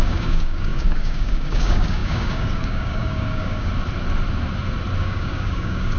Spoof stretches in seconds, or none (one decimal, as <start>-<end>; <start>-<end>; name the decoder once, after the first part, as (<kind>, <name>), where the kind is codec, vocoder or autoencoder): 0.0-3.7 (codec, DAC); 5.0-6.0